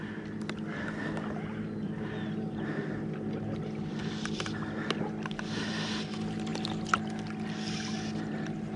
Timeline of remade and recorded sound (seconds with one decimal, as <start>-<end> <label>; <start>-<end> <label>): 0.0-8.8 recorded